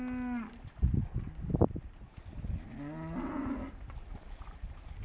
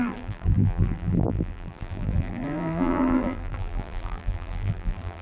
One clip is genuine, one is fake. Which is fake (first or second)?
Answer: second